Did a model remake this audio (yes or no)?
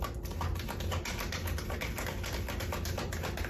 no